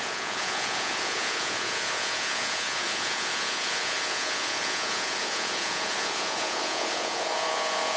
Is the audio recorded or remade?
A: remade